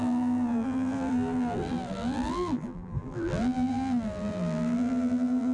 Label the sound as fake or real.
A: fake